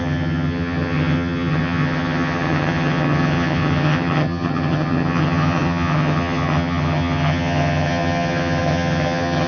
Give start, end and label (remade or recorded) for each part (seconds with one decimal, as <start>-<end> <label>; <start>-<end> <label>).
0.0-9.5 remade